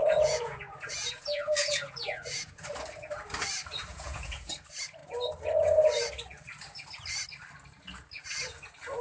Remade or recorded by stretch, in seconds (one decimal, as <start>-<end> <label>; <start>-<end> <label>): 0.0-2.6 remade; 2.6-3.9 recorded; 3.9-4.5 remade; 4.5-9.0 recorded